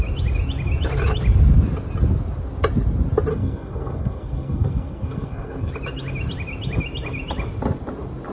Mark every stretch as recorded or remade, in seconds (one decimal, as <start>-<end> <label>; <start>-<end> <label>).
0.0-3.3 recorded; 3.3-5.7 remade; 5.7-8.3 recorded